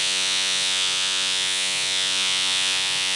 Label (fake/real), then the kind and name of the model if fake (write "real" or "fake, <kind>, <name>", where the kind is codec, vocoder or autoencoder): fake, vocoder, Vocos